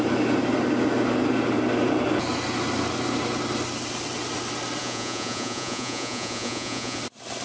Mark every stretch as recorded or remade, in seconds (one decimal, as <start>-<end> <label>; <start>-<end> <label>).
0.0-4.8 recorded; 4.8-7.0 remade; 7.0-7.4 recorded